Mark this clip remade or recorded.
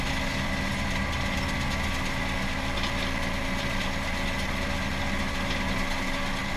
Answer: recorded